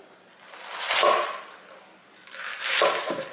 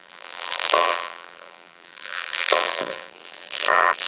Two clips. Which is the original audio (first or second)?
first